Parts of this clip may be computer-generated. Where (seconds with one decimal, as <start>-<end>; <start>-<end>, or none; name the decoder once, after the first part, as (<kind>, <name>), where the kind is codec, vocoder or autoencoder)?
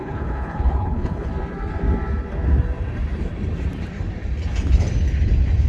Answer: 0.0-1.3 (codec, HILCodec)